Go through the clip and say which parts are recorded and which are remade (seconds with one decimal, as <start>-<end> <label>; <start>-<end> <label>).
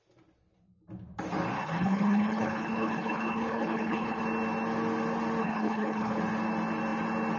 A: 0.0-1.6 recorded; 1.6-4.2 remade; 4.2-5.4 recorded; 5.4-6.2 remade; 6.2-7.4 recorded